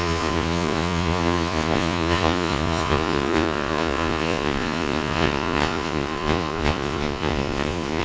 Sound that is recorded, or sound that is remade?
remade